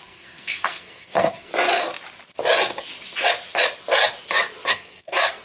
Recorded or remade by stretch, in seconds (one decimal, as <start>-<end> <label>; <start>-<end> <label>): 0.0-1.5 remade; 1.5-4.7 recorded; 4.7-5.4 remade

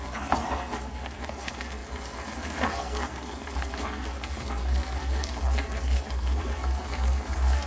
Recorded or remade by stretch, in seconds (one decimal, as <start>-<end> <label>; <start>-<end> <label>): 0.0-7.7 remade

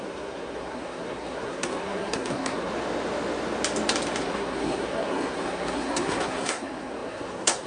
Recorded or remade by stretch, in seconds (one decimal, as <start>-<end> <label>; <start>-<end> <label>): 0.0-2.7 remade; 2.7-4.2 recorded; 4.2-7.7 remade

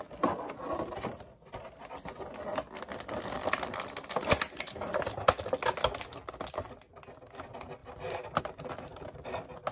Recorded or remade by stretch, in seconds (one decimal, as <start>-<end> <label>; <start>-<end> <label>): 0.0-9.7 recorded